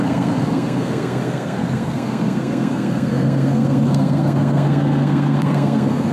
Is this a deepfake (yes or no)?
yes